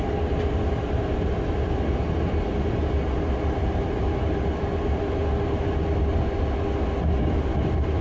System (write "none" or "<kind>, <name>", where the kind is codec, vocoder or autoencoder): none